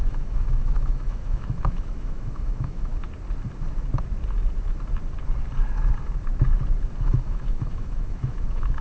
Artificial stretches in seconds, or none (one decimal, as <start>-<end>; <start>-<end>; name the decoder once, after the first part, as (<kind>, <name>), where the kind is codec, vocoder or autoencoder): 0.0-2.9 (autoencoder, DAC-VAE); 7.0-8.8